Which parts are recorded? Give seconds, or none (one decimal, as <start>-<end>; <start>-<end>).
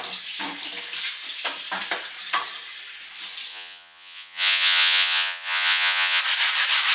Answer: 0.0-3.5; 6.2-6.9